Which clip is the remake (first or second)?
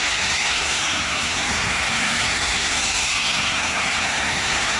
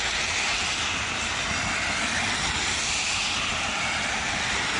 first